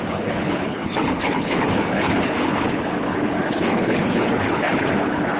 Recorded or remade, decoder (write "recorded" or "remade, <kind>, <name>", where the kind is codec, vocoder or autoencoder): remade, codec, HILCodec